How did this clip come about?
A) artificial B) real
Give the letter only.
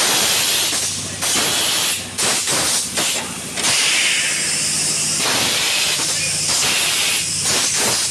B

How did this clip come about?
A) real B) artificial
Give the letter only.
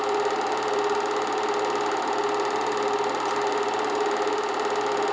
A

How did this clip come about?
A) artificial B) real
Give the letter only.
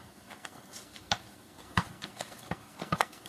A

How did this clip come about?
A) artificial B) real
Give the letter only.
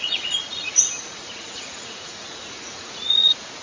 A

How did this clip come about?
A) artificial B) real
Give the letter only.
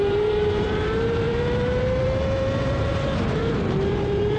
A